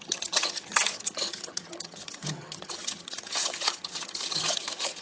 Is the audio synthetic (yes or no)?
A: yes